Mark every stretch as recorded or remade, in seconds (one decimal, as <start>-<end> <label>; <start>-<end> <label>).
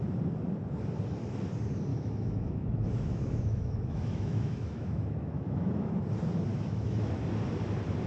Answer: 0.0-1.9 recorded; 1.9-5.9 remade; 5.9-6.5 recorded; 6.5-7.2 remade; 7.2-8.1 recorded